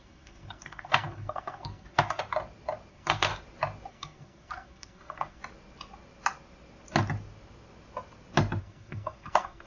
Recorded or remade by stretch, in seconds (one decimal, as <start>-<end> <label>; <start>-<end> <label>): 0.0-2.2 remade; 2.2-2.9 recorded; 2.9-3.3 remade; 3.3-3.9 recorded; 3.9-5.4 remade; 5.4-8.6 recorded; 8.6-9.7 remade